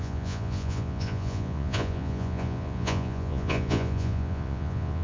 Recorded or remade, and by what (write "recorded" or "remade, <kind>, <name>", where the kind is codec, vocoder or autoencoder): remade, vocoder, Vocos